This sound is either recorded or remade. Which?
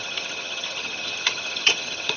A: remade